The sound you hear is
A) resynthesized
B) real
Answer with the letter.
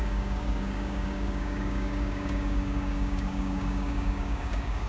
A